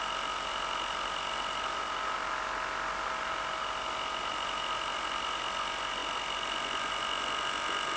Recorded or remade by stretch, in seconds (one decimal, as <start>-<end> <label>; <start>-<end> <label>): 0.0-8.0 recorded